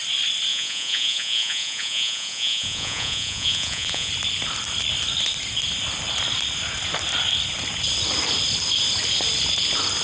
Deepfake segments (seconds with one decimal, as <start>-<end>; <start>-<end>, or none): 0.5-4.1

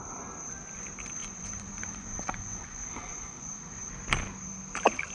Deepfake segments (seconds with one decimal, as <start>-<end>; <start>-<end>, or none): 1.2-3.9